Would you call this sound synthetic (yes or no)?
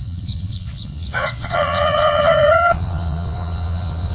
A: yes